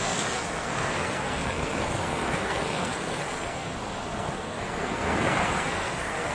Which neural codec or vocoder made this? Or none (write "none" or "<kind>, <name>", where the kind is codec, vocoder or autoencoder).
codec, SNAC